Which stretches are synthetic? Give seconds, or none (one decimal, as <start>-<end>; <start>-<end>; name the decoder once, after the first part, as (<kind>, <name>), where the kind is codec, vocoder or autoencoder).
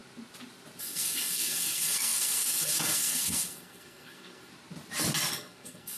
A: 0.8-4.5 (codec, SNAC); 5.3-6.0